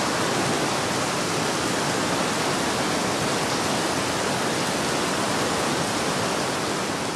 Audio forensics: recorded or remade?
recorded